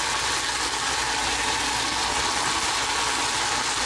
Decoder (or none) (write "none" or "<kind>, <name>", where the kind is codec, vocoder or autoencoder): none